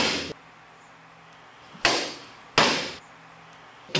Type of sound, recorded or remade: recorded